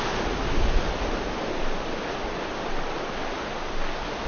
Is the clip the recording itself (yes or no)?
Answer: yes